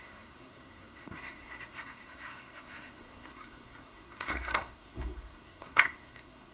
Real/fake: fake